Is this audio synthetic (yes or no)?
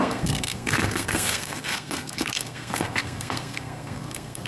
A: yes